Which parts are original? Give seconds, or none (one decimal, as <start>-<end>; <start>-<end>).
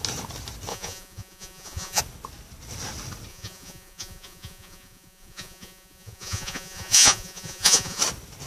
0.0-0.7; 2.0-3.3; 8.0-8.5